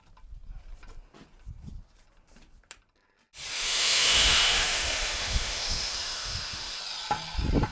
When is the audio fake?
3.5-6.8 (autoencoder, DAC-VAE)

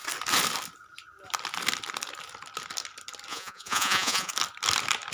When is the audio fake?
3.3-4.3 (vocoder, Vocos)

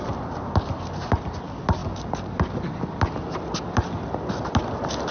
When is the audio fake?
none

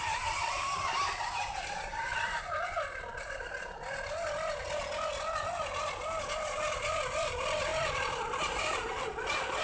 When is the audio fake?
0.0-2.1 (vocoder, BigVGAN v2); 6.5-7.7; 8.4-9.6